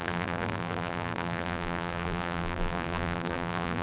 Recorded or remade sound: remade